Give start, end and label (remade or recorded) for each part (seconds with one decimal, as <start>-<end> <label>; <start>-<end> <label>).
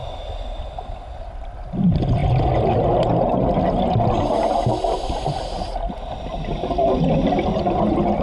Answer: 0.0-8.2 recorded